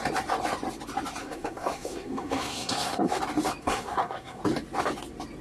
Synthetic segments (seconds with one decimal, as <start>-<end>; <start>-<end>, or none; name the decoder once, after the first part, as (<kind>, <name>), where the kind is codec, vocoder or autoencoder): 1.2-3.2 (codec, SNAC); 3.6-4.4